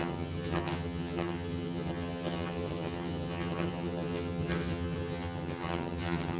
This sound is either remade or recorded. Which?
remade